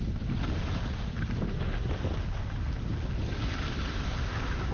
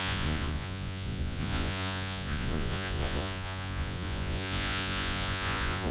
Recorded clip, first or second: first